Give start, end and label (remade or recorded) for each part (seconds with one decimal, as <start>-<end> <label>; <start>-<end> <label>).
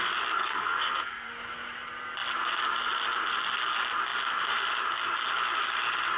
0.0-0.4 recorded; 0.4-1.3 remade; 1.3-6.2 recorded